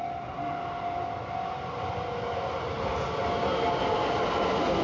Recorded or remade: recorded